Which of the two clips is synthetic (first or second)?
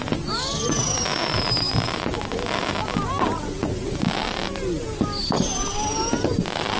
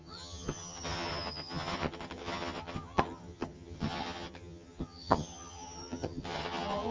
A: second